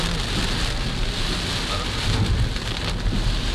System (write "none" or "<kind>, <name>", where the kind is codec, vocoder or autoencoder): none